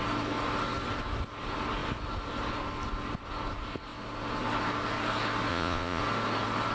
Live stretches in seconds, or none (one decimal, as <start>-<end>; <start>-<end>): 0.0-5.5; 6.0-6.7